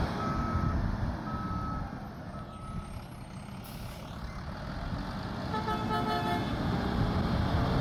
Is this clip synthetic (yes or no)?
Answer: no